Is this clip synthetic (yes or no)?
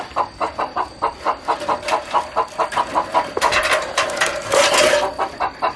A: no